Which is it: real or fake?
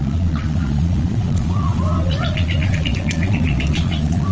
fake